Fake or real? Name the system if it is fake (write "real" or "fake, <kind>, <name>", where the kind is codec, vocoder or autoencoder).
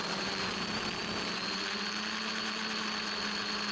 real